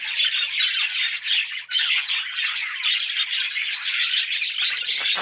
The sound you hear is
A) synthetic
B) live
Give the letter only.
B